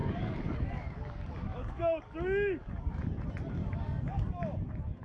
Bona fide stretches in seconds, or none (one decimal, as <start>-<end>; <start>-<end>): 3.0-3.6; 4.6-5.0